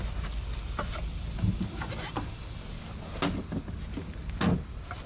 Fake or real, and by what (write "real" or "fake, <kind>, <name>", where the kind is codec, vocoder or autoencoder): real